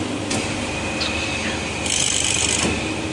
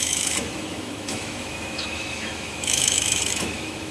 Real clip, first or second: first